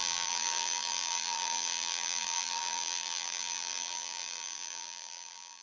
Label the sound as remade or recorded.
remade